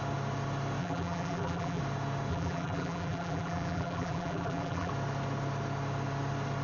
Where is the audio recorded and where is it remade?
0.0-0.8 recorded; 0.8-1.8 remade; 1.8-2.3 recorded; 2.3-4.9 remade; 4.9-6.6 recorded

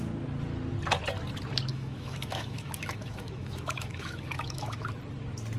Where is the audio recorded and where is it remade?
0.0-1.7 recorded; 1.7-4.9 remade; 4.9-5.6 recorded

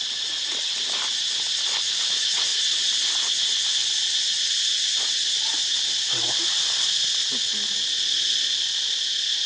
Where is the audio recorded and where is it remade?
0.0-9.5 recorded

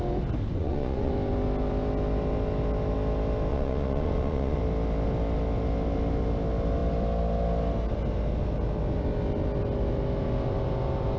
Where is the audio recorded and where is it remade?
0.0-0.5 recorded; 0.5-1.1 remade; 1.1-3.5 recorded; 3.5-4.6 remade; 4.6-11.2 recorded

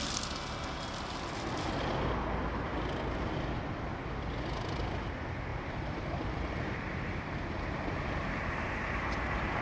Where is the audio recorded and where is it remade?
0.0-5.5 recorded; 5.5-9.6 remade